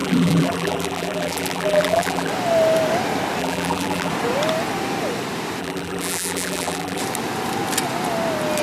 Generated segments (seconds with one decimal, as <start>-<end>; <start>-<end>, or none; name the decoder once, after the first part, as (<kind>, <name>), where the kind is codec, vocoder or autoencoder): 0.0-2.3 (vocoder, BigVGAN v2); 3.4-4.1; 5.6-7.0